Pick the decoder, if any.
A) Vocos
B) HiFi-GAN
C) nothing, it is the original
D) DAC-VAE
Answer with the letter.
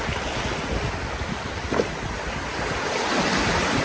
C